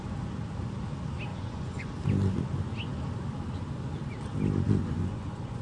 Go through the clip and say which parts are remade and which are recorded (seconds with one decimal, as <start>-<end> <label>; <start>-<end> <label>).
0.0-1.3 recorded; 1.3-1.9 remade; 1.9-4.8 recorded; 4.8-5.6 remade